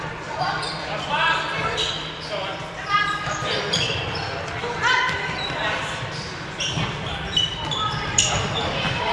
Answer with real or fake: fake